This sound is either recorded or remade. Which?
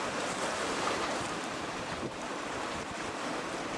remade